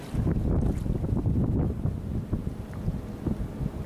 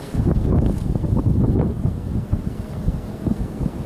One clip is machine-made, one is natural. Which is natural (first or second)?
first